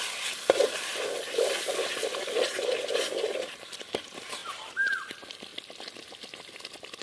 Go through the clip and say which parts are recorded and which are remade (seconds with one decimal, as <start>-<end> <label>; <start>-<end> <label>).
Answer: 0.0-0.9 remade; 0.9-2.1 recorded; 2.1-7.0 remade